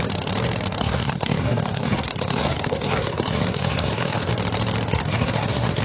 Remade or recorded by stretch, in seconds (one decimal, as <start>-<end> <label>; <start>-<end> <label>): 0.0-0.8 recorded; 0.8-4.3 remade; 4.3-4.9 recorded; 4.9-5.8 remade